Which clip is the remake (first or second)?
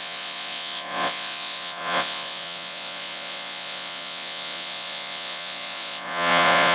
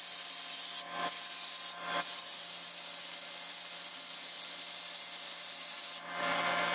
first